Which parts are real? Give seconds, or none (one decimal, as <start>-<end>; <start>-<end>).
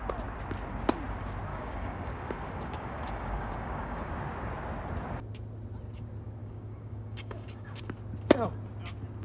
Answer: 0.0-1.5; 4.1-6.4; 7.8-9.2